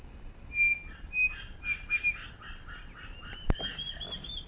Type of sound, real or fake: real